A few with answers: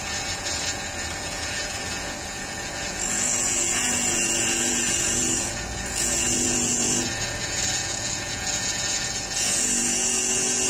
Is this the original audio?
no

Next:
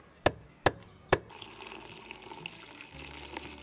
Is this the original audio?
yes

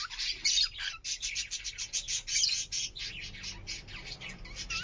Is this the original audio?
yes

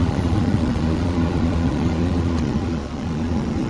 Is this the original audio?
no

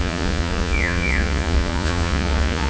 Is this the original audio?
no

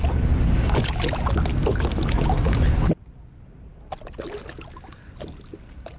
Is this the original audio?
yes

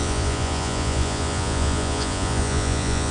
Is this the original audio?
no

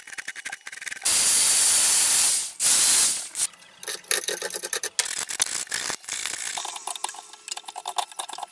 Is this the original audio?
yes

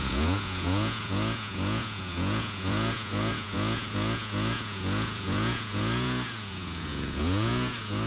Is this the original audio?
no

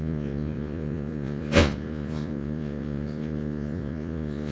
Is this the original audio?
no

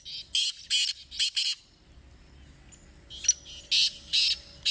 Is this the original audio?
yes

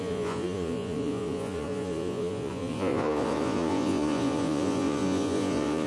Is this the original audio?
no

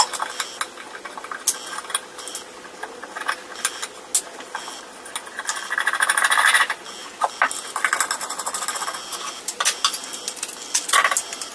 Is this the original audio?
yes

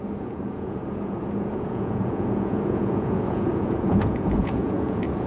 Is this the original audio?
no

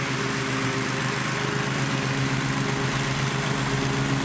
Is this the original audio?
yes